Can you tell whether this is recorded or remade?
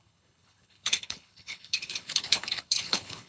remade